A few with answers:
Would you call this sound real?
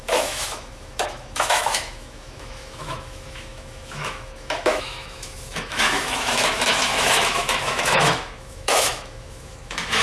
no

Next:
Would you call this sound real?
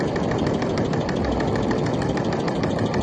yes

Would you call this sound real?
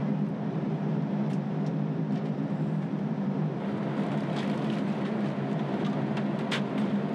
yes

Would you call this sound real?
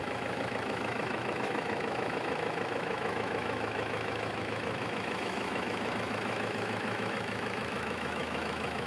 no